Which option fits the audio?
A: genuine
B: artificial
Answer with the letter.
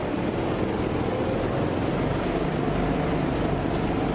A